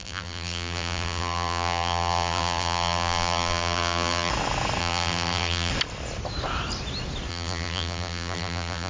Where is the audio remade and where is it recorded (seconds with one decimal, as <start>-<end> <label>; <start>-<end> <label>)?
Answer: 0.0-4.3 remade; 4.3-4.8 recorded; 4.8-5.7 remade; 5.7-7.3 recorded; 7.3-8.9 remade